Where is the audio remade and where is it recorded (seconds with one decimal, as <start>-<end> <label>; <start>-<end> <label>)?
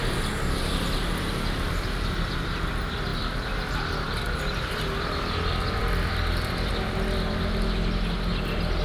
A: 0.0-8.8 recorded